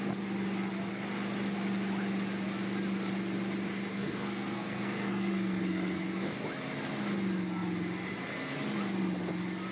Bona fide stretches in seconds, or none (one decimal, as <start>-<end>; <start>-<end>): 0.0-3.9; 6.3-9.7